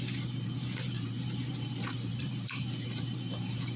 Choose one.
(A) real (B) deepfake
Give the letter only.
B